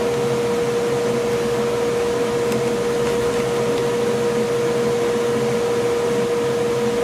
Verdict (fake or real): real